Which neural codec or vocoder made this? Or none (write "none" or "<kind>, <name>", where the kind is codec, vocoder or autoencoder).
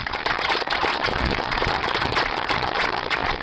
vocoder, Vocos